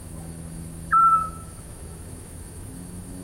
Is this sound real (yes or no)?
no